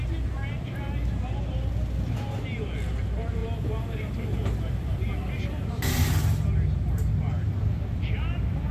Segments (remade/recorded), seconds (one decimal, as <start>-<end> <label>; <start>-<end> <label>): 0.0-8.7 recorded